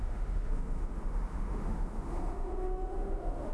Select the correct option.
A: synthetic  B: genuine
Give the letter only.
A